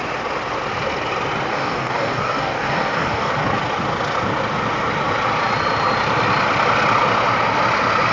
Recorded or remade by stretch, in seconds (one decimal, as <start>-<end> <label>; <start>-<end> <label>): 0.0-1.5 recorded; 1.5-3.3 remade; 3.3-8.1 recorded